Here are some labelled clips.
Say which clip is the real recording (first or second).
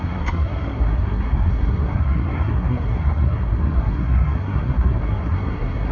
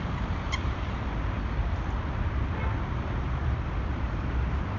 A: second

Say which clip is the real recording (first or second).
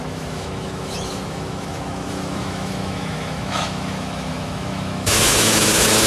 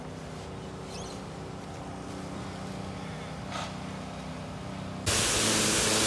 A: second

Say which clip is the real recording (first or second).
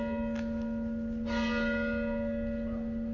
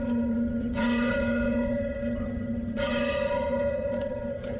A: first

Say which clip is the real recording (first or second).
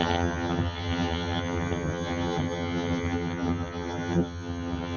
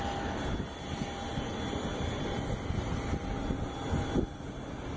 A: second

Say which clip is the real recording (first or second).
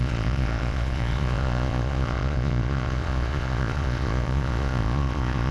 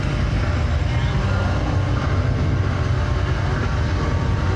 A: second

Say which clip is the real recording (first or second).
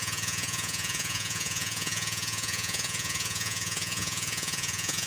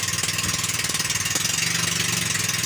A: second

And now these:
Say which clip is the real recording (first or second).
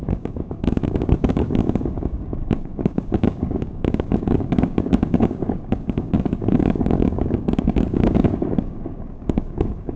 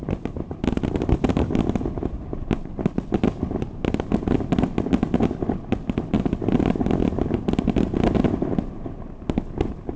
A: second